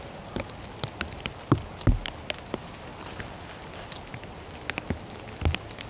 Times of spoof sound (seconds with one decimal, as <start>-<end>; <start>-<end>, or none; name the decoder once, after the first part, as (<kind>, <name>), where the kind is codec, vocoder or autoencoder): none

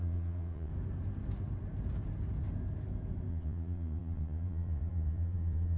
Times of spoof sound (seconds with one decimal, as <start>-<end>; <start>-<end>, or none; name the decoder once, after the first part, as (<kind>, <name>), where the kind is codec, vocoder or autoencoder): 0.0-0.7 (vocoder, Vocos); 3.3-5.8

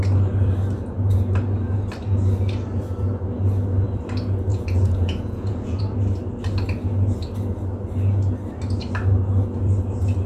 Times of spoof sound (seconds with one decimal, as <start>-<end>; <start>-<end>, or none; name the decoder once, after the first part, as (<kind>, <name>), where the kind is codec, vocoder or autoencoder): 4.5-5.8 (vocoder, Vocos)

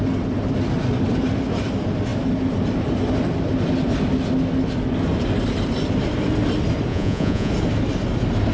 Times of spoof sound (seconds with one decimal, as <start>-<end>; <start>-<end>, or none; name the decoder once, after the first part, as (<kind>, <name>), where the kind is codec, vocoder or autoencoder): 6.9-7.5 (vocoder, Vocos)

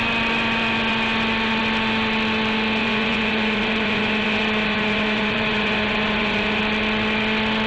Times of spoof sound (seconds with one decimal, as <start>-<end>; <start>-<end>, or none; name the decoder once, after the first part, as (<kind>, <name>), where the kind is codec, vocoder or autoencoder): 2.8-6.6 (vocoder, Vocos)

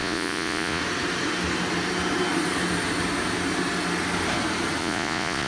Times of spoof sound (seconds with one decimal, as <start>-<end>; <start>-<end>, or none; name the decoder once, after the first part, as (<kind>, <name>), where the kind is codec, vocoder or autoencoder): 0.0-0.8 (vocoder, Vocos); 4.8-5.5